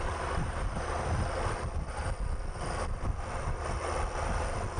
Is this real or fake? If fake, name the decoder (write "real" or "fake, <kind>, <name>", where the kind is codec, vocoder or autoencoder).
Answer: real